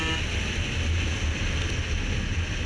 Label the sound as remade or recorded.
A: recorded